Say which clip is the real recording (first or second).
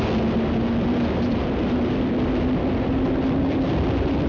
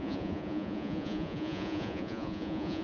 first